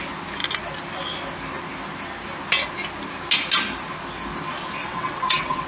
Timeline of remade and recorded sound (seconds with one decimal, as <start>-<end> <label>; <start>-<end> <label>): 0.0-4.8 recorded; 4.8-5.7 remade